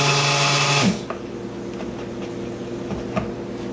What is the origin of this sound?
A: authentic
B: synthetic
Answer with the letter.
A